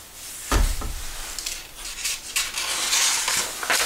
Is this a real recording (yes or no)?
yes